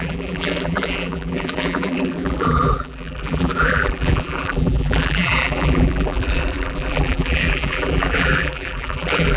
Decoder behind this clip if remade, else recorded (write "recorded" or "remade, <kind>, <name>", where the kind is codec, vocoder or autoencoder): remade, vocoder, BigVGAN v2